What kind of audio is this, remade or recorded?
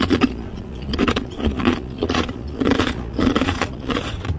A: remade